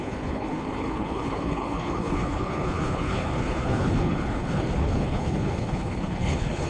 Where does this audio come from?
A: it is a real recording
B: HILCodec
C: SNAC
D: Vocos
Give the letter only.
B